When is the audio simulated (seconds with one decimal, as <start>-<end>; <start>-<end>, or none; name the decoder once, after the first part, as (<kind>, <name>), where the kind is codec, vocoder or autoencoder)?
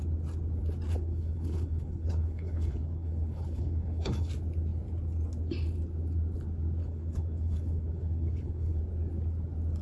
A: 0.9-4.3 (codec, HILCodec); 6.8-8.8